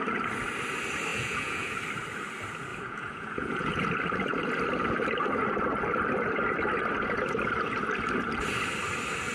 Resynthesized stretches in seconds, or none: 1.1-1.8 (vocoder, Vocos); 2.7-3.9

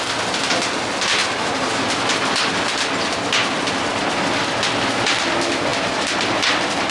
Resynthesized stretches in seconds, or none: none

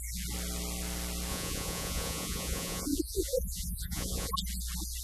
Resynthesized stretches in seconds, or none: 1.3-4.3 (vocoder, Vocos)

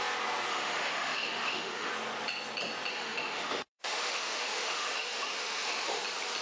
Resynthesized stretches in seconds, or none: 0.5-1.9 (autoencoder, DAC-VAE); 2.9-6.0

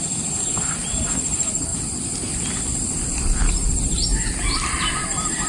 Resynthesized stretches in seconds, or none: none